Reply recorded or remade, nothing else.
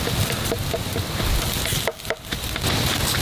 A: recorded